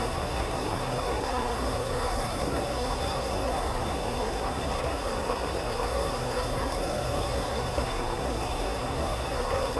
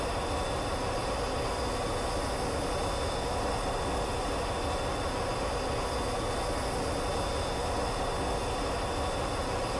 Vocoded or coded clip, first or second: first